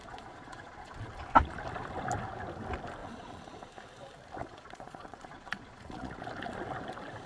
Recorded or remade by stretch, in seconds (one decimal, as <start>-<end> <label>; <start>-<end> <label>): 0.0-1.1 remade; 1.1-3.0 recorded; 3.0-3.7 remade; 3.7-4.4 recorded; 4.4-6.2 remade; 6.2-7.3 recorded

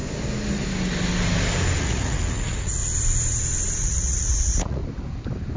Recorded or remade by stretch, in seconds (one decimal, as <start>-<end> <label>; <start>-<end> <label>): 0.0-1.8 recorded; 1.8-2.8 remade; 2.8-3.8 recorded; 3.8-4.8 remade; 4.8-5.6 recorded

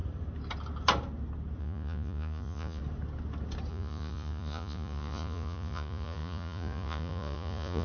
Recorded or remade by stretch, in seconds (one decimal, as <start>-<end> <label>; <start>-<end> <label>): 0.0-1.6 recorded; 1.6-2.8 remade; 2.8-3.7 recorded; 3.7-7.8 remade

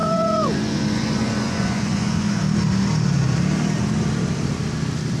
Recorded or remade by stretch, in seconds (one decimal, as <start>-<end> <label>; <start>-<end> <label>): 0.0-2.4 remade; 2.4-5.2 recorded

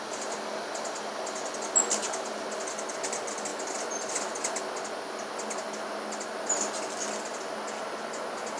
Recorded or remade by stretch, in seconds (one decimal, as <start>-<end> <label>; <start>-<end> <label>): 0.0-8.6 recorded